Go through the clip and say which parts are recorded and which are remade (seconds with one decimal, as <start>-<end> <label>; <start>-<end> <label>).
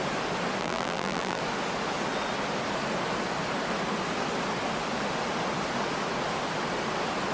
0.0-0.6 recorded; 0.6-1.4 remade; 1.4-7.3 recorded